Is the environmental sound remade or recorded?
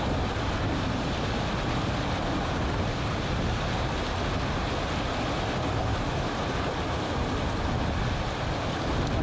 recorded